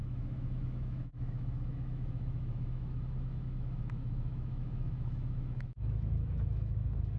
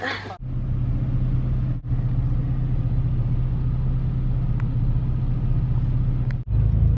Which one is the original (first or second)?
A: second